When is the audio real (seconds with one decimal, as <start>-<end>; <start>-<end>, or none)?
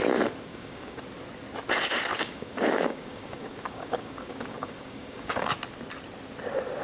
0.0-0.5; 1.0-2.1; 5.5-6.8